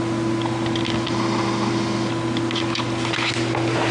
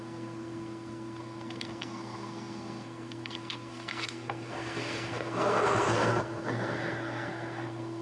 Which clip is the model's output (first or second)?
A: second